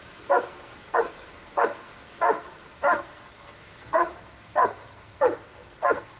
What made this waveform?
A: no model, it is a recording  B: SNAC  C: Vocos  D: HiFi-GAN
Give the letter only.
B